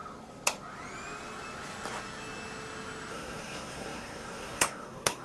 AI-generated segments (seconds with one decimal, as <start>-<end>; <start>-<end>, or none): 3.1-5.2

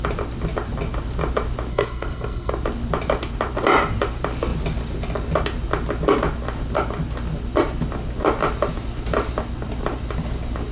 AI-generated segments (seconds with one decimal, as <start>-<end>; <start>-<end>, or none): 1.7-2.5

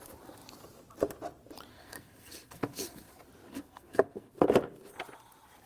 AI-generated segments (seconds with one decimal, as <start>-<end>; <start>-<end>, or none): 1.7-3.1; 3.5-4.3

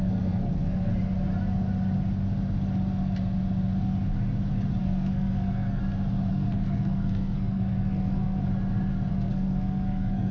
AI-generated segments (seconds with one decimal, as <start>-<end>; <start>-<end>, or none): 0.0-0.9; 4.8-5.8; 6.3-8.4; 9.1-10.3

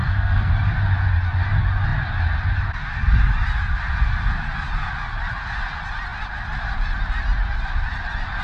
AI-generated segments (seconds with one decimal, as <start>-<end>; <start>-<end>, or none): 0.0-0.5